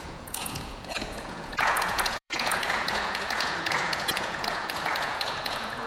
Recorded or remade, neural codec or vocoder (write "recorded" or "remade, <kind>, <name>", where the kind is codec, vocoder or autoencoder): remade, vocoder, Vocos